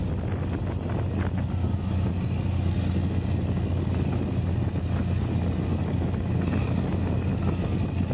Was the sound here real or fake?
real